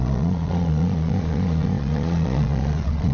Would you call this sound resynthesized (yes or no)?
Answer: yes